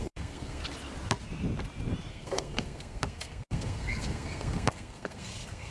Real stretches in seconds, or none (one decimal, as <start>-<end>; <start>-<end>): 0.6-2.1